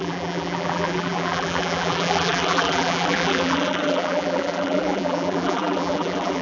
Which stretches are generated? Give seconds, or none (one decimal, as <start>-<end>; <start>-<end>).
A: 0.0-6.4